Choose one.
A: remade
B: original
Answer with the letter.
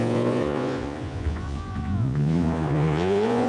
A